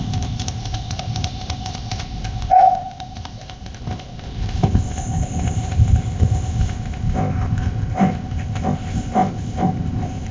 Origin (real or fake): fake